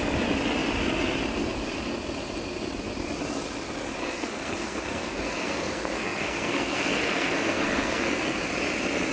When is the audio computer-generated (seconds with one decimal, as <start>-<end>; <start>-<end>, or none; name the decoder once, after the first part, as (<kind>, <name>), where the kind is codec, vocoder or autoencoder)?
4.0-8.4 (codec, SNAC)